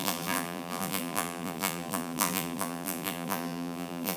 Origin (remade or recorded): remade